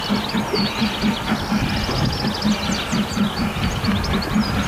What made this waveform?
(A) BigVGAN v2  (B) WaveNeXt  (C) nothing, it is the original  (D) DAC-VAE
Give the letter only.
C